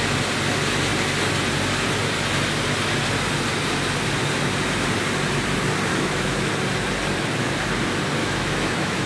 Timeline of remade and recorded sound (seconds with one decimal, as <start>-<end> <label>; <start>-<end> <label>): 0.0-5.9 recorded; 5.9-6.5 remade; 6.5-8.2 recorded; 8.2-9.1 remade